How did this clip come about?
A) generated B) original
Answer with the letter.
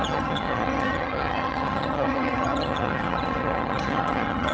A